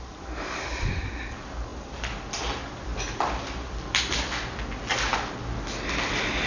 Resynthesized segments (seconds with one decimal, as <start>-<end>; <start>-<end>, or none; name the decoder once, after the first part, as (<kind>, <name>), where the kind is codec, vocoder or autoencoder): none